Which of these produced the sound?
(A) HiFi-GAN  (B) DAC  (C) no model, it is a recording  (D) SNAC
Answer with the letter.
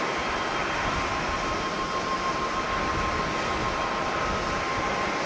C